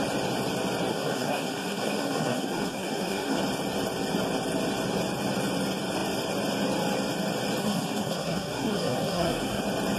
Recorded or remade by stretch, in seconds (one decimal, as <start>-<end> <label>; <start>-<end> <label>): 0.0-0.9 recorded; 0.9-3.4 remade; 3.4-7.6 recorded; 7.6-9.6 remade; 9.6-10.0 recorded